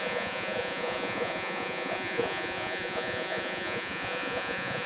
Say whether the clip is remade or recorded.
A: remade